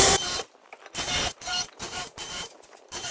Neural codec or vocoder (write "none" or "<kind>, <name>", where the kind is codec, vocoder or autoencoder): vocoder, BigVGAN v2